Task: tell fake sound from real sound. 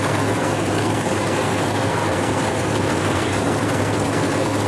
fake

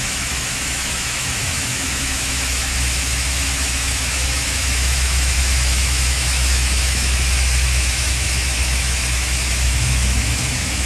fake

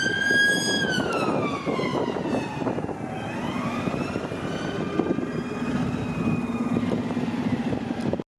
real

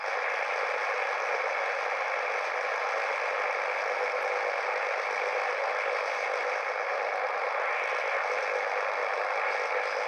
real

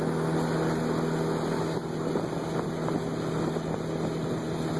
real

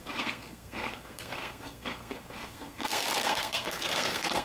fake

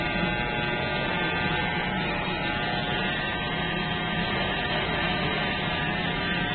real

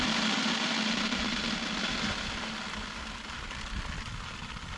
real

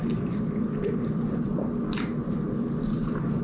real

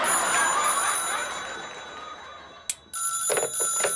real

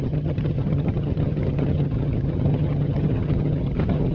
fake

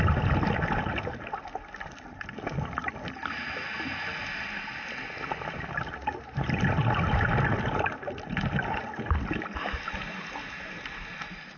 real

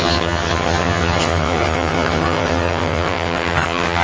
fake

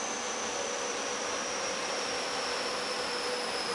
fake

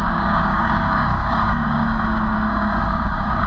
fake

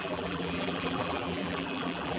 fake